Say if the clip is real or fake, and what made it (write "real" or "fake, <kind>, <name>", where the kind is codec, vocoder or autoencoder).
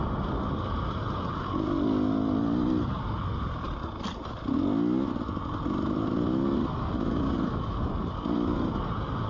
real